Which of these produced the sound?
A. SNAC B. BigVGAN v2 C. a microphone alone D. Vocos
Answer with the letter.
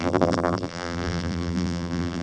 B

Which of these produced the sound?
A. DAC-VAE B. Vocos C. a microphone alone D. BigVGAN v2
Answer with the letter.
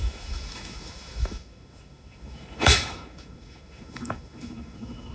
A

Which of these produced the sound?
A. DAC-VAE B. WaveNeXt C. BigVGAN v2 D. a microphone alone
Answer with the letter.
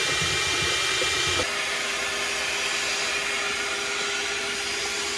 D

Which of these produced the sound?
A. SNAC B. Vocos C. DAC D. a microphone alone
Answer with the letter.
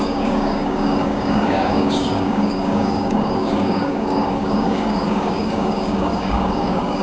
C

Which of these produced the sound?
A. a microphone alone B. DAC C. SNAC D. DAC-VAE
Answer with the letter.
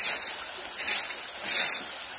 A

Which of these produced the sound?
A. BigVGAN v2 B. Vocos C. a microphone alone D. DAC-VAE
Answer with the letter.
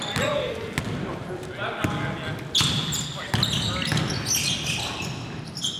C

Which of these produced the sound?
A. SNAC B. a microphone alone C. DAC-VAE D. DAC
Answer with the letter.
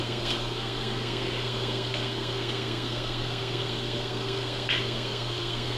A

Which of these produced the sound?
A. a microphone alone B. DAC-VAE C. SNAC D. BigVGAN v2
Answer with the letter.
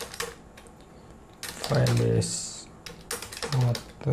A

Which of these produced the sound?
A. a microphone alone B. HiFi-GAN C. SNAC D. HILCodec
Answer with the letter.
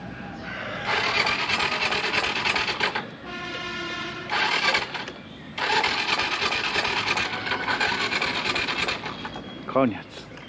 A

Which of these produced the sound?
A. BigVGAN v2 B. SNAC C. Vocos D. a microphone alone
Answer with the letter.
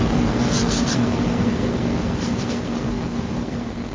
B